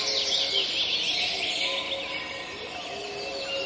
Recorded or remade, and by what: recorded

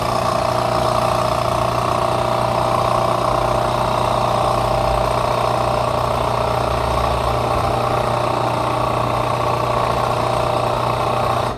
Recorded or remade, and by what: recorded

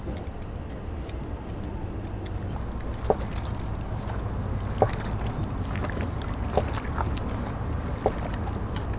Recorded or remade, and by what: recorded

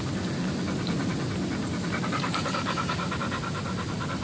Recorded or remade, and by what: recorded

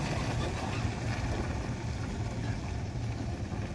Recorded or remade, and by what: recorded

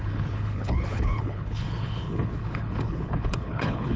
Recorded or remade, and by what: remade, codec, HILCodec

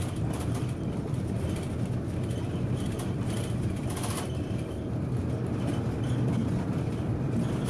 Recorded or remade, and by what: recorded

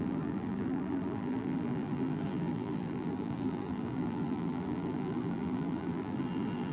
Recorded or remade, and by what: remade, vocoder, BigVGAN v2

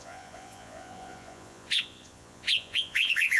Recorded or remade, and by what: remade, vocoder, Vocos